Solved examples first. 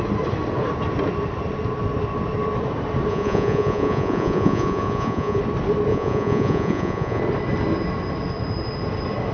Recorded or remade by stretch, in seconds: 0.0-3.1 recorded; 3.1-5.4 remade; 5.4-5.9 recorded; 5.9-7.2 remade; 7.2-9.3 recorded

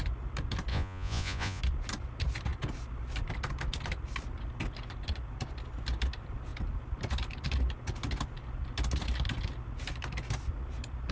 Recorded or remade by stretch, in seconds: 0.0-0.7 recorded; 0.7-1.6 remade; 1.6-11.1 recorded

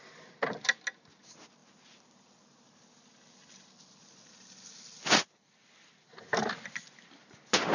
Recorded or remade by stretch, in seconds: 0.0-7.7 recorded

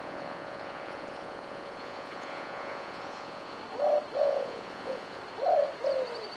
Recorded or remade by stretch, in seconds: 0.0-3.6 remade; 3.6-4.2 recorded; 4.2-5.2 remade; 5.2-6.4 recorded

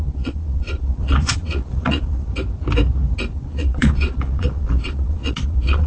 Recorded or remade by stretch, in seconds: 0.0-2.3 remade; 2.3-3.3 recorded; 3.3-5.9 remade